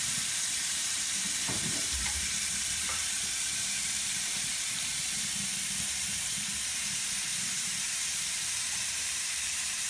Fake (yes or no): yes